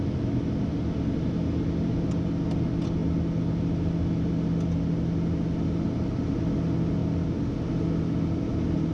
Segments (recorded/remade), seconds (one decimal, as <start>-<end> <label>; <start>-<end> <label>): 0.0-8.9 recorded